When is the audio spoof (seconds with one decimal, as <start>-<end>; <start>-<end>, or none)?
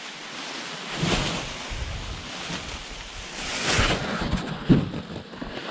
3.5-4.6